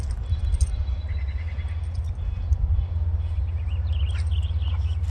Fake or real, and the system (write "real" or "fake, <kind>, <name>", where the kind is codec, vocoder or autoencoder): real